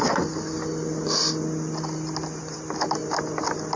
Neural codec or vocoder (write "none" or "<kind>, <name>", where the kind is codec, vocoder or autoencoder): none